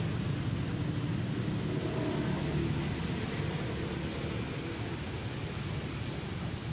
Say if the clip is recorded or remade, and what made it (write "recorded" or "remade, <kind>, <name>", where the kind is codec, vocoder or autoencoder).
recorded